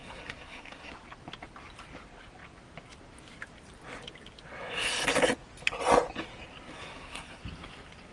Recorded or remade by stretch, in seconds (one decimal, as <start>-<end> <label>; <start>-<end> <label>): 0.0-0.9 remade; 0.9-6.7 recorded; 6.7-7.4 remade; 7.4-8.1 recorded